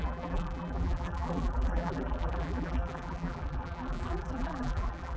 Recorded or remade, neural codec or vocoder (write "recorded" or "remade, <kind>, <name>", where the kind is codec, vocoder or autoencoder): remade, vocoder, BigVGAN v2